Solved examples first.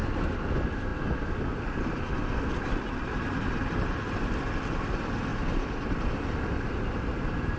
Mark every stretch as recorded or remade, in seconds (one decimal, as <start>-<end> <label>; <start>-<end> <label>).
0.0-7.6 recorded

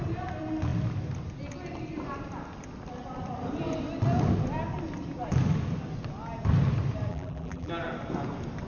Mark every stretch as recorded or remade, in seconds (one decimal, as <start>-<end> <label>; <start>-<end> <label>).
0.0-7.1 recorded; 7.1-7.7 remade; 7.7-8.7 recorded

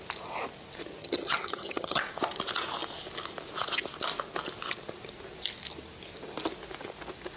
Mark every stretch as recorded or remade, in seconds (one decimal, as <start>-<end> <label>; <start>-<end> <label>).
0.0-1.0 recorded; 1.0-2.0 remade; 2.0-7.4 recorded

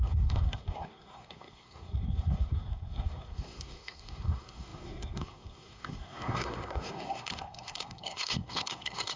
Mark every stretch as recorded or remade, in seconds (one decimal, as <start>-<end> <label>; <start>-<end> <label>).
0.0-9.2 remade

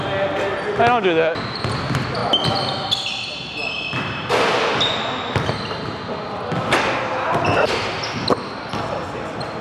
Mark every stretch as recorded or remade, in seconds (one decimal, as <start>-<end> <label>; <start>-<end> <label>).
0.0-9.6 recorded

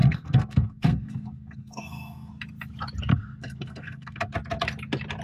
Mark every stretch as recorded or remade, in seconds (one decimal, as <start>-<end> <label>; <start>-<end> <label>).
0.0-2.3 remade; 2.3-3.1 recorded; 3.1-4.3 remade; 4.3-5.2 recorded

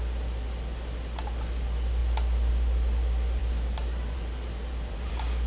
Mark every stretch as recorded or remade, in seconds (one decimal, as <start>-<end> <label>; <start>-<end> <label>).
0.0-3.4 recorded; 3.4-5.1 remade; 5.1-5.5 recorded

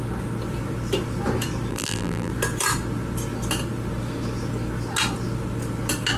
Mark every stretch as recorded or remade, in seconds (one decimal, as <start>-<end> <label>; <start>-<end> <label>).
0.0-1.7 recorded; 1.7-2.3 remade; 2.3-6.2 recorded